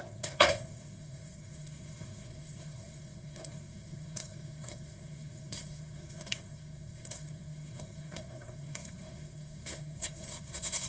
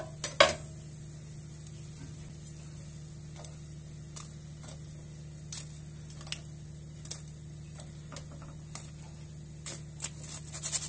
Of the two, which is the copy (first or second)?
first